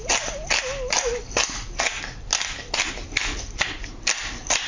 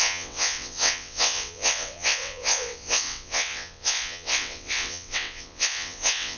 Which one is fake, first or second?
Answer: second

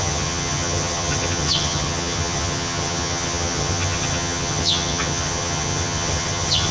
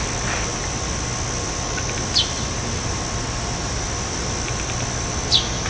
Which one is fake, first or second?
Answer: first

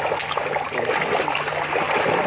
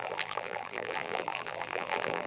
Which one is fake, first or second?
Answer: second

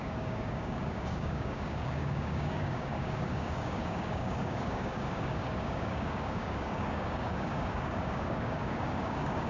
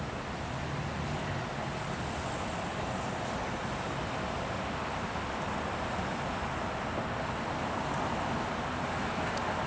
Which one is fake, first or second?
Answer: first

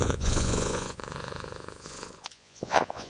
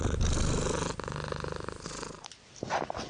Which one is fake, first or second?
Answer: first